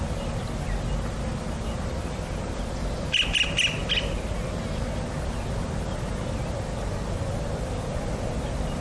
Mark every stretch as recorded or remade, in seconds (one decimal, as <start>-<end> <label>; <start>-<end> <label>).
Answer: 0.0-8.8 recorded